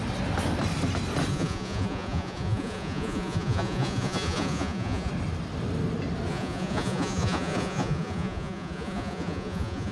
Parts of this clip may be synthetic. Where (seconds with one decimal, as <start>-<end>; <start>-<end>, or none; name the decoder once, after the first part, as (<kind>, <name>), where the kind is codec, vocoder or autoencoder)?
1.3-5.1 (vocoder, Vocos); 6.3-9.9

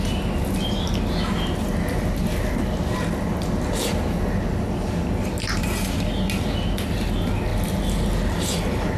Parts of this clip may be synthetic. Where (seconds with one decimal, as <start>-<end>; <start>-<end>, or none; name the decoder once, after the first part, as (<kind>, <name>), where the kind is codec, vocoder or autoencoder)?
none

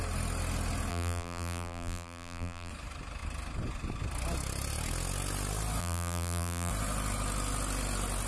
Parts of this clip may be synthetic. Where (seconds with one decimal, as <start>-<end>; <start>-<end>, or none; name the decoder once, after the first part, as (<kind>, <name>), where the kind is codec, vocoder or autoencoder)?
0.9-2.7 (vocoder, BigVGAN v2); 5.8-6.7

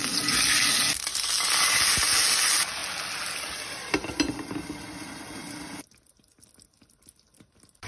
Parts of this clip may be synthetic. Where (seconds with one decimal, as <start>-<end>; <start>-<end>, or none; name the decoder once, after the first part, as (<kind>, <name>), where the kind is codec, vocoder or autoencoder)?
none

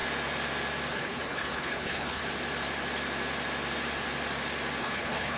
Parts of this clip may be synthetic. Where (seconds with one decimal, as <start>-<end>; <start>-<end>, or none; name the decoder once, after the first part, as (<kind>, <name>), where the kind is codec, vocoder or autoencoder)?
0.9-2.2 (codec, HILCodec); 4.8-5.4

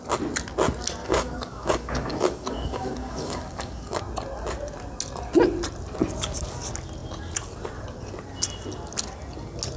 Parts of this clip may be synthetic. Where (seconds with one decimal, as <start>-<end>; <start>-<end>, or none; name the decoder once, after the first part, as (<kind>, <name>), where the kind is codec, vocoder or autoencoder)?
1.0-4.0 (codec, DAC)

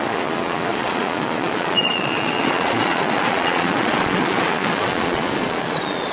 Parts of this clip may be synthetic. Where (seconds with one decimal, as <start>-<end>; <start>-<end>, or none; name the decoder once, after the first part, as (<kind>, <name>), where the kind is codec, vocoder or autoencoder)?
0.0-6.1 (vocoder, Vocos)

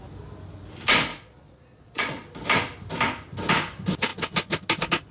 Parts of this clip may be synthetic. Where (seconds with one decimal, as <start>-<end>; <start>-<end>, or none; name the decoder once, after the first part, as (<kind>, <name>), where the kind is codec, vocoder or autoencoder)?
1.1-2.3 (vocoder, Vocos)